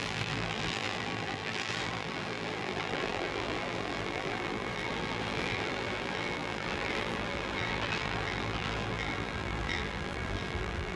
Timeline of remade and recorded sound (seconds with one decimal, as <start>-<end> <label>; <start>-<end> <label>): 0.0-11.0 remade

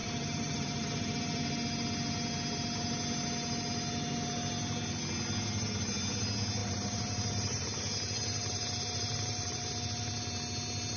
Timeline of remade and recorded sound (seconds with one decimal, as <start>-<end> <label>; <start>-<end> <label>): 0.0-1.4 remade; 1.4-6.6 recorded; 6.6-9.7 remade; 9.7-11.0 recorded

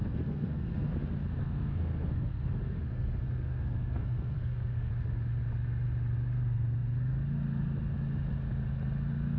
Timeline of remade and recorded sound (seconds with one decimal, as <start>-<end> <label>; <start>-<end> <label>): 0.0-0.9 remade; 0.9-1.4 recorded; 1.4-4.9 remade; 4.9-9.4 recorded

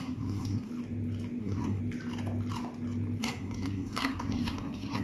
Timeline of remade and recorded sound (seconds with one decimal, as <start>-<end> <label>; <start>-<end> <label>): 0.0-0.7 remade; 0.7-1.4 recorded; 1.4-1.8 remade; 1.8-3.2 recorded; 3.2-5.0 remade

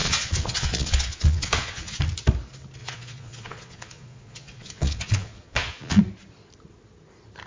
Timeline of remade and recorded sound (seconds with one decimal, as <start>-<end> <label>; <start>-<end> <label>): 0.0-2.0 remade; 2.0-2.8 recorded; 2.8-6.0 remade; 6.0-7.5 recorded

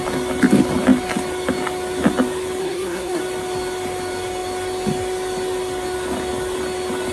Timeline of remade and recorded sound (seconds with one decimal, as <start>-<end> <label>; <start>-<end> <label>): 0.0-2.6 recorded; 2.6-3.2 remade; 3.2-7.1 recorded